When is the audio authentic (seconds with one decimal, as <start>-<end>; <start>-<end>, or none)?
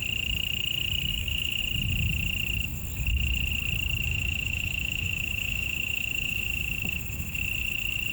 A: 0.0-1.1; 1.6-4.1; 7.4-8.1